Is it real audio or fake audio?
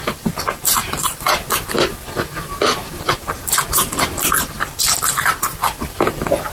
fake